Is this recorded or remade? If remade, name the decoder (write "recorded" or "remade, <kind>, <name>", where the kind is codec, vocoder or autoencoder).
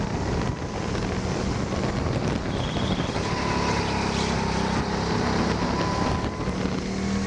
recorded